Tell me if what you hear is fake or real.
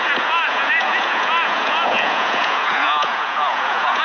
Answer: fake